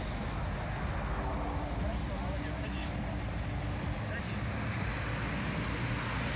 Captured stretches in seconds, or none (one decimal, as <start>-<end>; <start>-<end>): 0.0-6.4